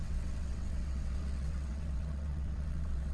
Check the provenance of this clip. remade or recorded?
remade